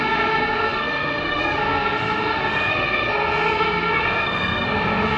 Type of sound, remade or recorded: remade